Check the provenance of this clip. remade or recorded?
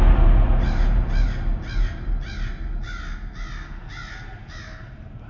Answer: recorded